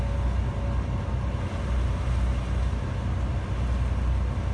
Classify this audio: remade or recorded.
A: recorded